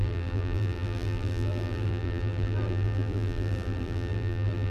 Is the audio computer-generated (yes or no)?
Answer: yes